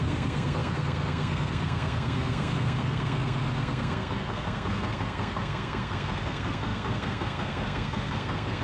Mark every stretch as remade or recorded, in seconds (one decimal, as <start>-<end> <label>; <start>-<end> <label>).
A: 0.0-8.6 remade